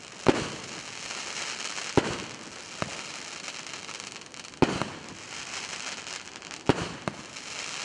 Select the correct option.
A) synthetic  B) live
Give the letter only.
B